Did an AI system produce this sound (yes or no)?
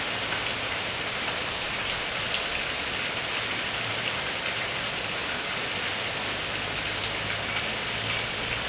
no